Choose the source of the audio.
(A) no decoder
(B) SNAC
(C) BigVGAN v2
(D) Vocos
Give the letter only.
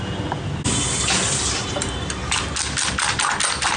A